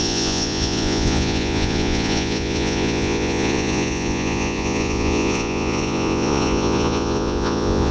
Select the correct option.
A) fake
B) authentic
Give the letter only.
A